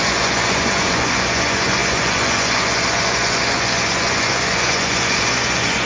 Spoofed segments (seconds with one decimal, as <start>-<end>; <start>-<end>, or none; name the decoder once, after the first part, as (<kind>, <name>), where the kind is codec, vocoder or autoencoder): 0.0-5.9 (vocoder, Vocos)